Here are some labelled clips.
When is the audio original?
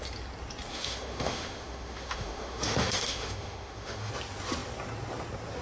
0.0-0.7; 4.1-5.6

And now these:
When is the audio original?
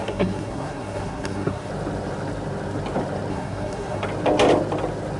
1.7-3.3; 4.0-5.2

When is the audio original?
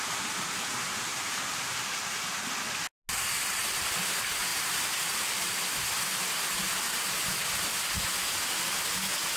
0.0-1.1; 1.8-4.5; 5.6-9.4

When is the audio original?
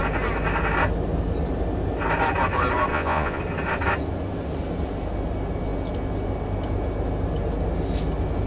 0.0-2.9; 3.4-8.5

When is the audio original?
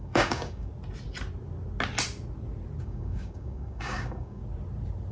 0.7-2.8; 4.4-5.1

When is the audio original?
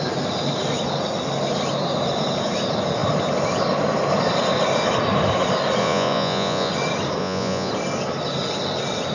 0.0-5.8; 6.7-7.2; 7.7-9.1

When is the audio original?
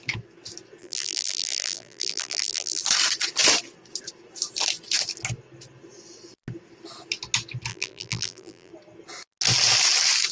0.0-0.8; 2.8-7.7; 8.7-10.3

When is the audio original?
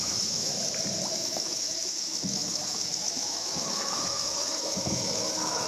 0.5-1.1